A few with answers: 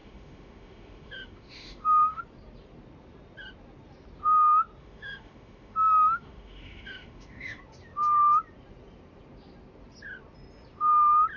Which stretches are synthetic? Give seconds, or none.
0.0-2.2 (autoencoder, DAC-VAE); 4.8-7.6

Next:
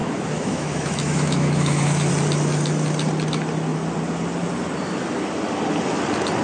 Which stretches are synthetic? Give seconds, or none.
0.0-2.1 (autoencoder, DAC-VAE)

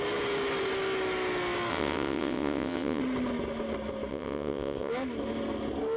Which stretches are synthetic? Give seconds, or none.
1.7-3.0 (vocoder, WaveNeXt); 4.1-4.9

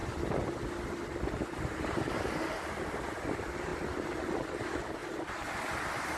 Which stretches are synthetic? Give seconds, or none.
none

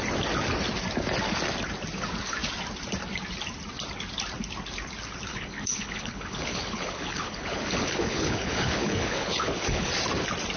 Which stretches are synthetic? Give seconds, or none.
5.3-9.9 (codec, HILCodec)

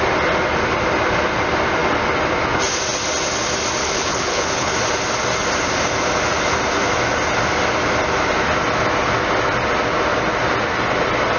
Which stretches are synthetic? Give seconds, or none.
3.8-4.7 (codec, HILCodec)